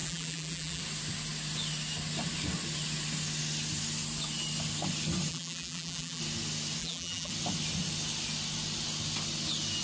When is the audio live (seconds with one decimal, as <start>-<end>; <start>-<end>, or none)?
0.8-5.3; 6.2-6.8; 7.3-9.8